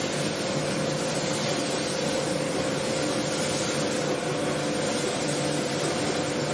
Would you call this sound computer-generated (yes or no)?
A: no